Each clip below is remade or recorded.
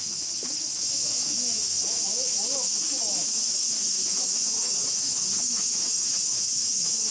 remade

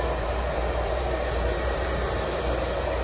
remade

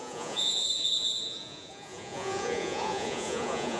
remade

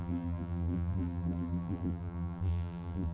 remade